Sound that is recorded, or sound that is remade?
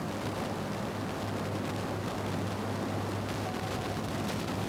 recorded